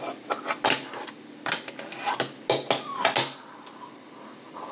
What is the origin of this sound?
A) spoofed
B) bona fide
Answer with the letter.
B